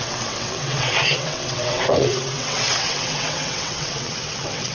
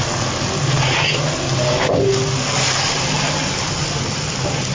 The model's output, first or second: first